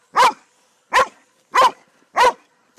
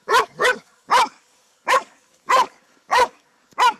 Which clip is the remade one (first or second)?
second